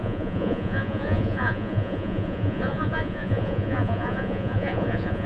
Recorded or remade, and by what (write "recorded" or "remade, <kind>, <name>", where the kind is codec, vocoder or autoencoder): remade, vocoder, Vocos